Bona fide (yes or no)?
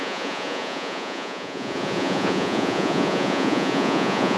no